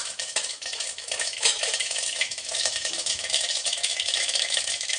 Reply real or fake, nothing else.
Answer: fake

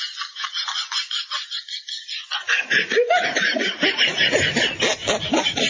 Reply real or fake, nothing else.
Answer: real